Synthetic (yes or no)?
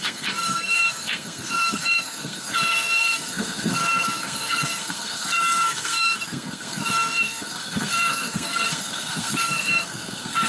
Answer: yes